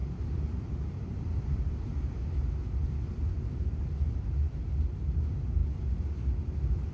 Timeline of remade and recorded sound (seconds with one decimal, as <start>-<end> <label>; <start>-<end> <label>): 0.0-1.7 remade; 1.7-6.9 recorded